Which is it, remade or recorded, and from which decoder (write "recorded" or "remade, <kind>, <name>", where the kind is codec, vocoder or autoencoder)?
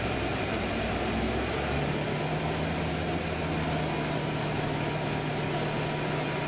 recorded